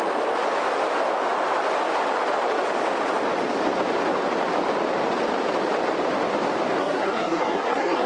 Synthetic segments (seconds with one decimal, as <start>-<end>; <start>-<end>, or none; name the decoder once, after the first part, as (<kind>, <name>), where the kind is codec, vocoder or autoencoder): 6.8-8.1 (codec, SNAC)